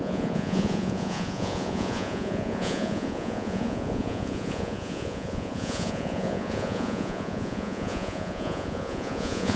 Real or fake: fake